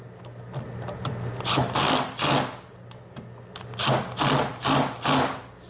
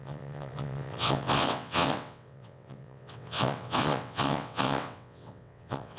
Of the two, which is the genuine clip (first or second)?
first